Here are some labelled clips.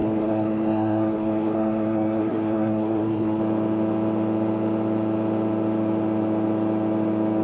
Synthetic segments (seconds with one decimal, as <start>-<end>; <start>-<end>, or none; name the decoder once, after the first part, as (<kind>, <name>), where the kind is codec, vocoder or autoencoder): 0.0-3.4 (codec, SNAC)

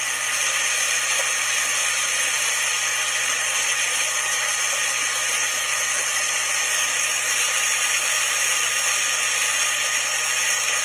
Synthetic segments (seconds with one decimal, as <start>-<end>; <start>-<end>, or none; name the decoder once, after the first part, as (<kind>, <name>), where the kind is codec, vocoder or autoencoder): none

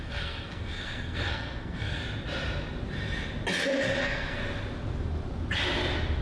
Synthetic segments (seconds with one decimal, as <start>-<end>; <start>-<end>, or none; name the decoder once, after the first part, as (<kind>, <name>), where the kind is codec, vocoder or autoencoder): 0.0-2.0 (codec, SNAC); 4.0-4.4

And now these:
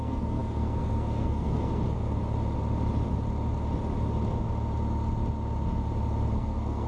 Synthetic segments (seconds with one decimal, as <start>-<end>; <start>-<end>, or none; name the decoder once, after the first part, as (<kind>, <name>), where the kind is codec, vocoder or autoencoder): 0.0-2.2 (codec, SNAC); 6.3-6.9

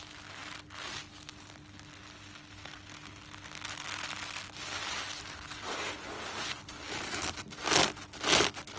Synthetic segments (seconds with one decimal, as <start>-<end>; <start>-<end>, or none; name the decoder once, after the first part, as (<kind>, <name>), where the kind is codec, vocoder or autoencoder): none

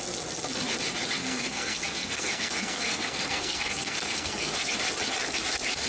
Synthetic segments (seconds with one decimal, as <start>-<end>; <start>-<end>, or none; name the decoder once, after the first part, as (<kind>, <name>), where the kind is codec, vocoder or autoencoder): 1.2-4.7 (codec, SNAC)